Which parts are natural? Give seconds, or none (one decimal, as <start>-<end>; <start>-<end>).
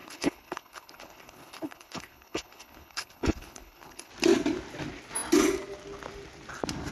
4.1-6.9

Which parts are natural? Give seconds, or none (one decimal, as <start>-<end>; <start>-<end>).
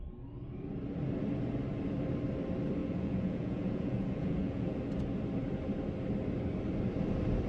0.0-2.8; 4.8-7.5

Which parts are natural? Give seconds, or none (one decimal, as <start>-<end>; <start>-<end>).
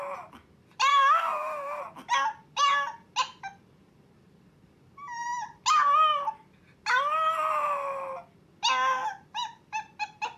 0.0-0.9; 1.8-10.4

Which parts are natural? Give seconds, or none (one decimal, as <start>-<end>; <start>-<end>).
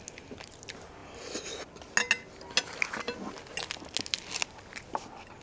0.0-5.4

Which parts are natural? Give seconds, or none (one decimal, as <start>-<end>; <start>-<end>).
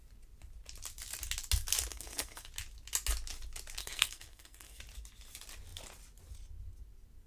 0.0-1.9; 2.5-3.8; 4.8-7.3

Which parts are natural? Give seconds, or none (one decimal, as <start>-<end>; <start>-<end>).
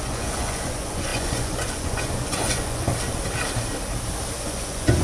2.9-4.4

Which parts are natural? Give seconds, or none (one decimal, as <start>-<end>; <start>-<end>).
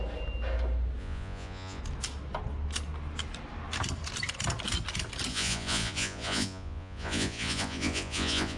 0.0-1.0; 1.8-5.3